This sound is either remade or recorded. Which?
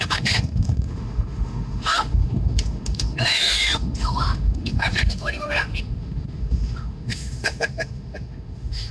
remade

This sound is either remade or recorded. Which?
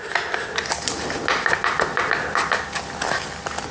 recorded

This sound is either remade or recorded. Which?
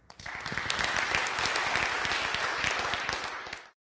recorded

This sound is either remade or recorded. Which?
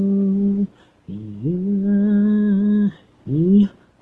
recorded